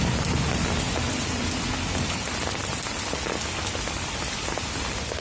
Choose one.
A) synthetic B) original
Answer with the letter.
B